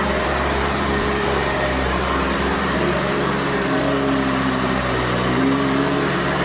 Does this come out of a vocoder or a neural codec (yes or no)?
yes